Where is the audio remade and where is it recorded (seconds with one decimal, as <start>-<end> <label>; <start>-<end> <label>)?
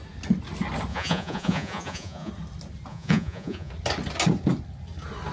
0.0-0.9 recorded; 0.9-2.3 remade; 2.3-2.9 recorded; 2.9-3.7 remade; 3.7-5.3 recorded